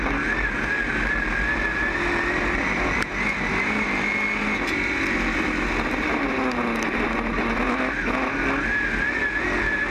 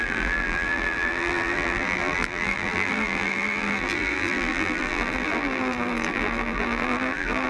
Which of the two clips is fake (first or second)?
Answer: second